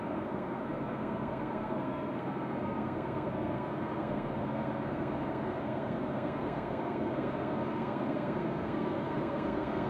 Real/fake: fake